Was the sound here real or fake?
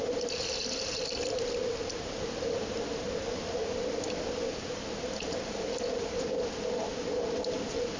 real